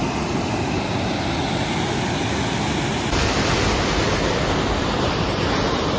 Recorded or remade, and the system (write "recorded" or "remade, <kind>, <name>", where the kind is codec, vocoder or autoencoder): recorded